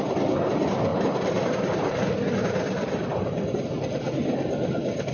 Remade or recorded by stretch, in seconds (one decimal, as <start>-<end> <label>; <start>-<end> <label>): 0.0-0.9 recorded; 0.9-2.0 remade; 2.0-5.1 recorded